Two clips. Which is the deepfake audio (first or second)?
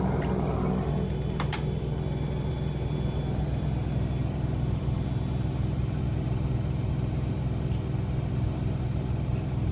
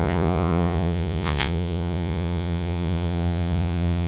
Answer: second